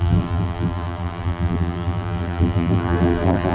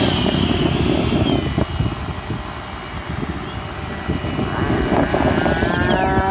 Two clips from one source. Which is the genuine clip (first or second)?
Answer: second